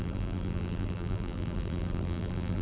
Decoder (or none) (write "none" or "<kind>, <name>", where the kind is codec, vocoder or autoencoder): vocoder, BigVGAN v2